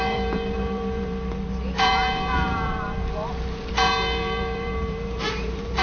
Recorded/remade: remade